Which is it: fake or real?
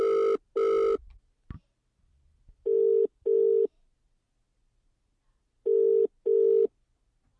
real